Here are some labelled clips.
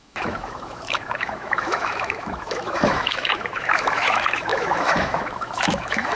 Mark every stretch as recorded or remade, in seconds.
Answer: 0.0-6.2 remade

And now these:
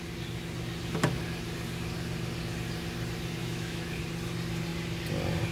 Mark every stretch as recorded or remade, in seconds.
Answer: 0.0-3.4 recorded; 3.4-4.0 remade; 4.0-5.5 recorded